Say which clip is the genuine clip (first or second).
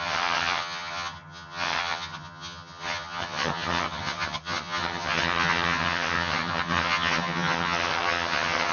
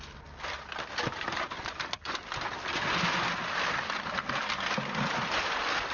second